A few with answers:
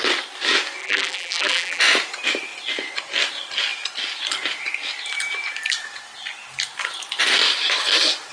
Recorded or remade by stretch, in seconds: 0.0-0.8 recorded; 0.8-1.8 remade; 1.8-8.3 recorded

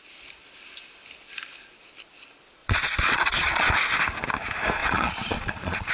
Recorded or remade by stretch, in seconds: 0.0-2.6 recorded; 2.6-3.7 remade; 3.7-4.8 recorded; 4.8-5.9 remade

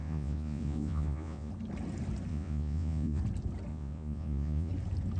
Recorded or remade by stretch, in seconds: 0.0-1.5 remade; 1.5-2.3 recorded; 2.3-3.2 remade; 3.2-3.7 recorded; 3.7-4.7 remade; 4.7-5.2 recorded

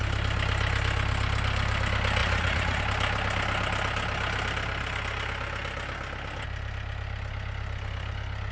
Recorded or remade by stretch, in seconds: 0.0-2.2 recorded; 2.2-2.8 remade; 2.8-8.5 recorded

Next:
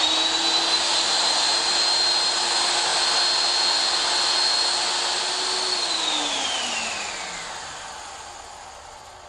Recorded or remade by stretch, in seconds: 0.0-9.3 recorded